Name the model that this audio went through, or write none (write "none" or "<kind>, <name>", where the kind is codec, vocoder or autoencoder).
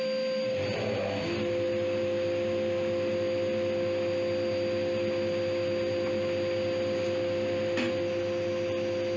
none